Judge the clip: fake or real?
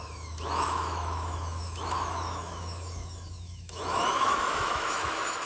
fake